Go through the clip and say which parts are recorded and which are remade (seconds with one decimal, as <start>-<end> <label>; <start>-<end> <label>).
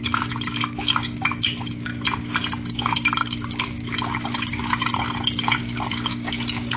0.0-1.9 remade; 1.9-2.7 recorded; 2.7-4.9 remade; 4.9-5.6 recorded; 5.6-6.8 remade